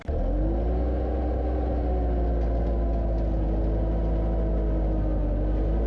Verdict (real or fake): real